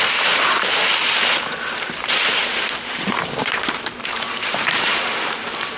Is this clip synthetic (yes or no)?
yes